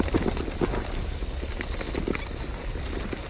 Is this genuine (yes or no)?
yes